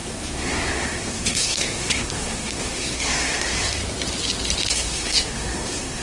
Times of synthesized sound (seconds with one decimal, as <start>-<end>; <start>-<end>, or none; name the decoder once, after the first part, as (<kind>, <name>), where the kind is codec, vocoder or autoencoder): 0.0-3.8 (codec, SNAC); 4.7-6.0